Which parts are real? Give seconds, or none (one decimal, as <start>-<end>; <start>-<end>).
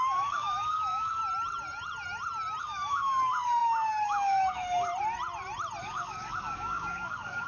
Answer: 1.2-2.6; 4.9-5.8